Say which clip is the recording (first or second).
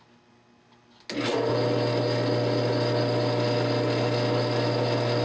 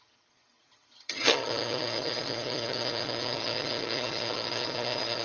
first